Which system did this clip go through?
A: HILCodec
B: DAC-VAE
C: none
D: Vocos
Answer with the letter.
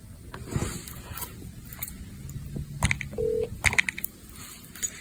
C